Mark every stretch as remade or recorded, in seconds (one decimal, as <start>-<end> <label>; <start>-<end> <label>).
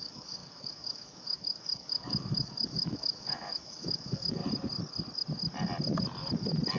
0.0-4.4 remade; 4.4-6.8 recorded